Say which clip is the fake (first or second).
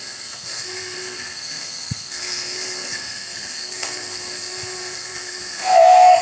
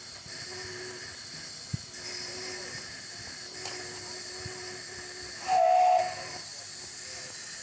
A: first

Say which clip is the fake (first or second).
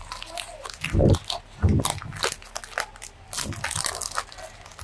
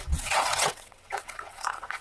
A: second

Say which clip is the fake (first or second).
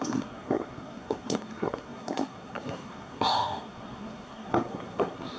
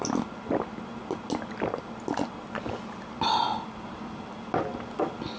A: first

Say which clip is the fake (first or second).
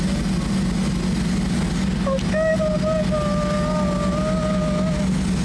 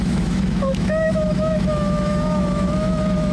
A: second